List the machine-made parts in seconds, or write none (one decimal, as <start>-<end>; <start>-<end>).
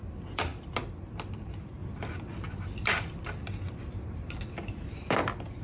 0.0-0.5; 1.3-5.6